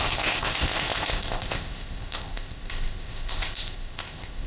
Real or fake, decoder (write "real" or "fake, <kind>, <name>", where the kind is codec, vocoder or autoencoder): fake, codec, ZipCodec